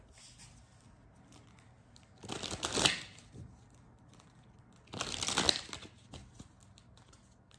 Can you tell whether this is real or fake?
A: real